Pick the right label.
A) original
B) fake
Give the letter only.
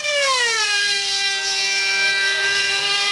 B